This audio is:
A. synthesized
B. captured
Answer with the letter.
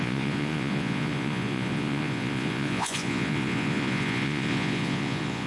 A